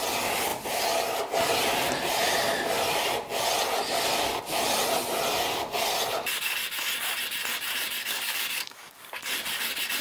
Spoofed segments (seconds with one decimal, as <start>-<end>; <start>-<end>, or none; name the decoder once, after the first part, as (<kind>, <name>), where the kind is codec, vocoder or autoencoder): 8.0-9.2 (codec, DAC)